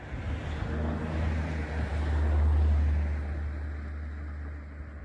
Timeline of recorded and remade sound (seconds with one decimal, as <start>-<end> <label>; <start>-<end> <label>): 0.0-5.0 recorded